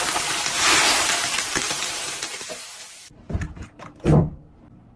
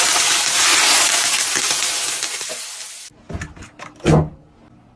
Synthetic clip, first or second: first